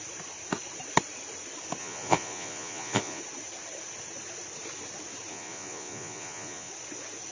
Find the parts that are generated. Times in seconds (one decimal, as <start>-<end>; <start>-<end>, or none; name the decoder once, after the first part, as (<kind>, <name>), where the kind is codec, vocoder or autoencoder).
1.8-3.2 (vocoder, Vocos); 5.3-6.7